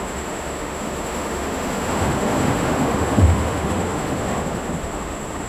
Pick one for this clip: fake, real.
fake